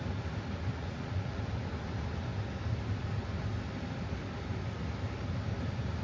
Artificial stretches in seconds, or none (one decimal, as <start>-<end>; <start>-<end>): 0.7-1.4